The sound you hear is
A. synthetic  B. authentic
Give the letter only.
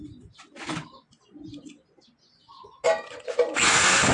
B